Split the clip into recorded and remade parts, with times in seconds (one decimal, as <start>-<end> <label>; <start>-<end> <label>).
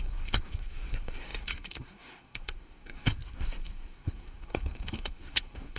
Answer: 0.0-5.8 remade